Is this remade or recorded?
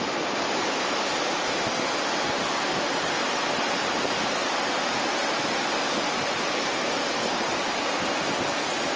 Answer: recorded